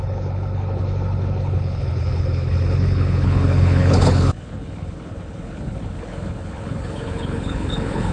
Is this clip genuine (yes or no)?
no